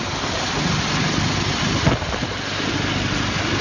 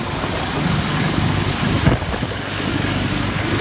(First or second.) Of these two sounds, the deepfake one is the second